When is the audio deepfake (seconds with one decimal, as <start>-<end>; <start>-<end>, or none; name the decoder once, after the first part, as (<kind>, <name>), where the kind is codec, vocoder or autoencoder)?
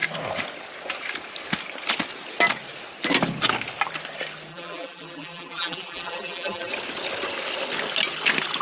4.5-6.7 (vocoder, BigVGAN v2)